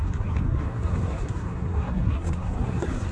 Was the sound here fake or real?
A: fake